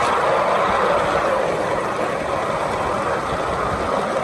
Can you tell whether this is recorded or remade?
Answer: recorded